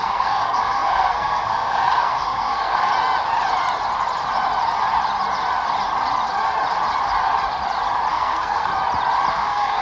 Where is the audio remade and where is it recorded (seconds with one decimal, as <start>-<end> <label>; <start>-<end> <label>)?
0.0-2.9 remade; 2.9-8.1 recorded; 8.1-8.7 remade; 8.7-9.3 recorded; 9.3-9.8 remade